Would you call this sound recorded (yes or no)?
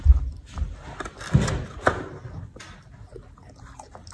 yes